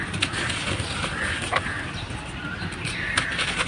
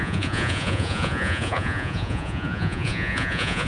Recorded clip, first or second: first